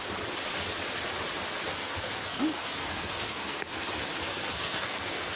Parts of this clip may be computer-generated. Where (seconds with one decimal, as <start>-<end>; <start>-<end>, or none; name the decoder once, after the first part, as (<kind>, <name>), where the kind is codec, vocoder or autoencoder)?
1.7-3.9 (codec, SNAC); 4.3-5.4